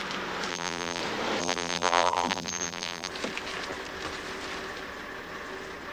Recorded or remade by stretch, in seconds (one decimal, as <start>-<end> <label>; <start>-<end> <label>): 0.0-0.5 recorded; 0.5-1.0 remade; 1.0-1.4 recorded; 1.4-3.1 remade; 3.1-5.9 recorded